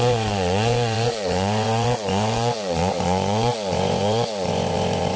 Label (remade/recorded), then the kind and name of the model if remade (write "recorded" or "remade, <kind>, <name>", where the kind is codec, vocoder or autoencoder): remade, vocoder, Vocos